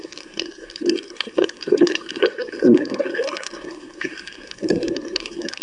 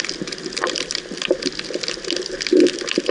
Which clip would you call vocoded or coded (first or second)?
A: first